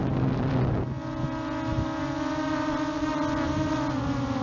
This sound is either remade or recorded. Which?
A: recorded